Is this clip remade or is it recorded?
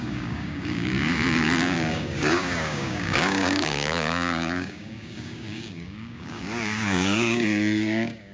remade